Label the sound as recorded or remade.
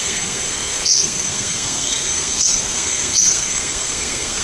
remade